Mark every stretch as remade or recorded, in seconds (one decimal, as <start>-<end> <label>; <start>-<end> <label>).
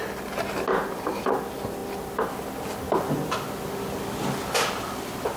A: 0.0-5.4 recorded